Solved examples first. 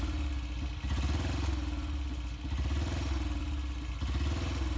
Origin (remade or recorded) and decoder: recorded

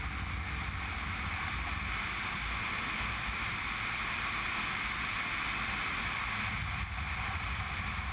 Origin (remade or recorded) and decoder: recorded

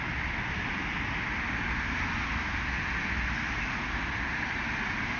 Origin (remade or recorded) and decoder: recorded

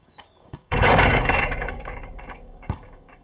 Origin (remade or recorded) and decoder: remade, codec, DAC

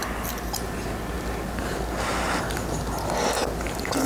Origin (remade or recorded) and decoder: recorded